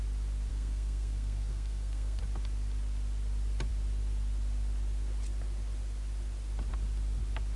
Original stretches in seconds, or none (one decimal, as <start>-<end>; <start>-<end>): 0.0-0.5; 2.2-7.6

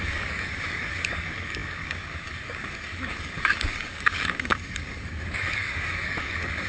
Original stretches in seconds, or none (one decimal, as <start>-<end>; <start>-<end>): none

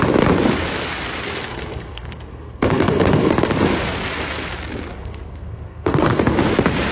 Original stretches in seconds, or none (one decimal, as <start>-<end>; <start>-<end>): 0.0-1.5; 3.3-5.0; 6.2-6.9

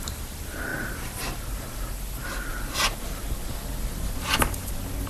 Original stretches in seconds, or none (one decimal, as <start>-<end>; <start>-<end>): 0.0-2.5; 3.2-5.1

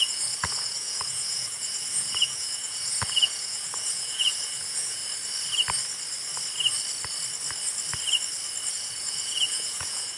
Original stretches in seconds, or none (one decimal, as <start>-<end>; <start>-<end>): 5.0-8.7